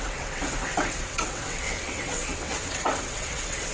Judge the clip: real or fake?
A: fake